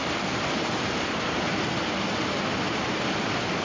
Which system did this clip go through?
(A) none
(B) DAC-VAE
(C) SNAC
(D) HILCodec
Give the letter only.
A